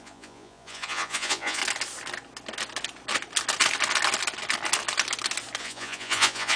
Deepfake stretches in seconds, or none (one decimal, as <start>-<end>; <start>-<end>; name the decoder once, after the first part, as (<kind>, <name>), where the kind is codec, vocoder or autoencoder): 0.0-1.6 (vocoder, Vocos); 5.6-6.6